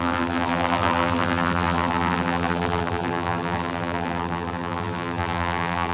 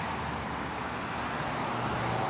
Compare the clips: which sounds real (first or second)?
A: second